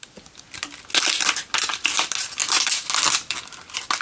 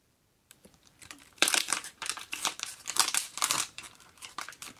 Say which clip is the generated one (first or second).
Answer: second